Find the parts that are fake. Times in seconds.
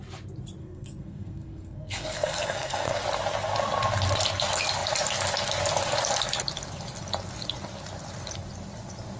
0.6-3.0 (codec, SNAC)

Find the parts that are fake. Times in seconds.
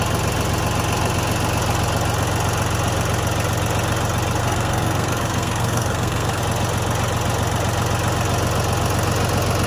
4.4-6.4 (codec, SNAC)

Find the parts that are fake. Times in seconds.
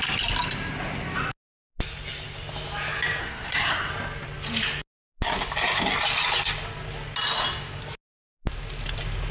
3.2-3.9 (codec, SNAC)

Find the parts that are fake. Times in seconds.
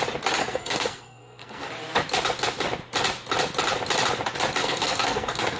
0.4-1.7 (codec, SNAC); 4.6-5.6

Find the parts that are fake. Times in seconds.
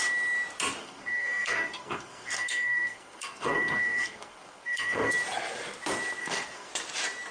0.8-5.1 (codec, SNAC); 6.2-6.7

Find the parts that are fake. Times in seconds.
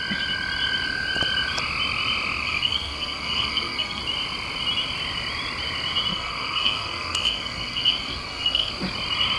2.4-4.0 (codec, SNAC); 6.1-8.7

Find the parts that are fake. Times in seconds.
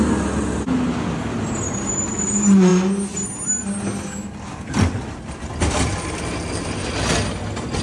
none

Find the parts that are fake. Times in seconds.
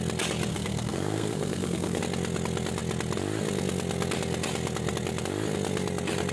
0.5-2.0 (codec, SNAC)